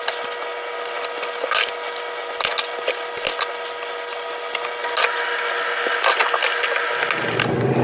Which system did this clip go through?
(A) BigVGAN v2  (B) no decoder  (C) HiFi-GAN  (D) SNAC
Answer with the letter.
B